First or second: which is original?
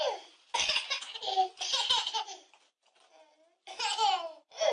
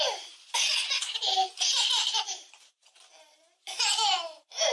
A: first